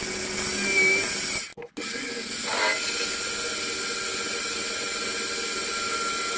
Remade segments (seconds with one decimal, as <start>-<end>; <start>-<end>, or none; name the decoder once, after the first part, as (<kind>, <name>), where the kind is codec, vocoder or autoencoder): none